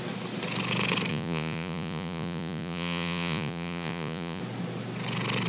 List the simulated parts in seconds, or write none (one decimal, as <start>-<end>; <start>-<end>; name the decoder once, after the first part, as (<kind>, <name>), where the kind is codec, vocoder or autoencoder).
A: 1.1-4.4 (vocoder, Vocos)

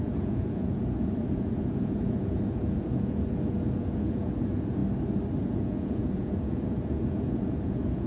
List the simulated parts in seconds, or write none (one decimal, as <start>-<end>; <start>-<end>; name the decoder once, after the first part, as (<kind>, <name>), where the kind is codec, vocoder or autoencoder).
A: 0.0-4.8 (vocoder, Vocos); 5.4-8.1

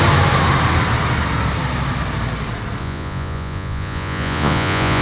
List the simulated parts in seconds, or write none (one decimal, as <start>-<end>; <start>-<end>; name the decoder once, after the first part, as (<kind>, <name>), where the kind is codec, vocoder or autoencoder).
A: 2.8-5.0 (vocoder, Vocos)

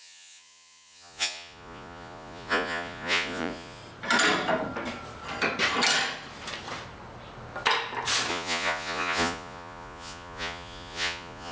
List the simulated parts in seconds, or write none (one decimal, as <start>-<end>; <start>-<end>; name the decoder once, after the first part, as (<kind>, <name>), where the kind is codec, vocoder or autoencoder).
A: 0.0-3.8 (vocoder, Vocos); 8.3-11.5

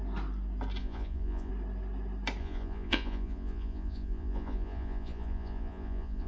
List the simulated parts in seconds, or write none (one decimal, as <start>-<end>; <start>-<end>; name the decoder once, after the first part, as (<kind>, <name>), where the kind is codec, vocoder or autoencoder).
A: 0.8-1.5 (vocoder, Vocos); 2.4-6.3

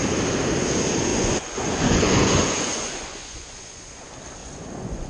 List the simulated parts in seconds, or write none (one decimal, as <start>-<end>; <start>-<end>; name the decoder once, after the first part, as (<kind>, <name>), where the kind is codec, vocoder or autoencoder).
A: 1.1-4.0 (vocoder, Vocos); 4.4-5.1

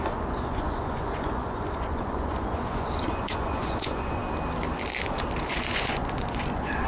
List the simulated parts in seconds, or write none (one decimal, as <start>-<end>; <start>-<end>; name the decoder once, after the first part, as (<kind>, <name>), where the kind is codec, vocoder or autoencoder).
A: 0.0-4.2 (vocoder, Vocos); 5.5-6.9